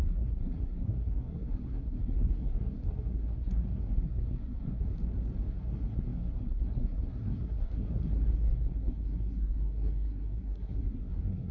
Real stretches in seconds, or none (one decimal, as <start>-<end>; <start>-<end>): 5.0-5.5